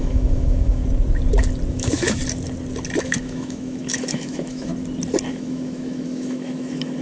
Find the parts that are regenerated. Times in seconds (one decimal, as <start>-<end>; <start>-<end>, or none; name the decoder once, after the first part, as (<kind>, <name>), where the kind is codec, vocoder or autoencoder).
0.0-0.8 (autoencoder, DAC-VAE); 1.7-2.2; 3.0-4.7; 5.3-7.0